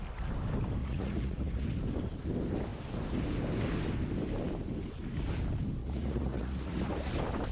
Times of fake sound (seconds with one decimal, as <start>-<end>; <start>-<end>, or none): 0.8-1.6; 5.8-7.1